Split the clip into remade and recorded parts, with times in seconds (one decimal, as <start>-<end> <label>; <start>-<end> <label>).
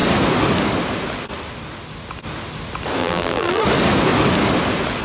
0.0-3.0 recorded; 3.0-3.6 remade; 3.6-5.0 recorded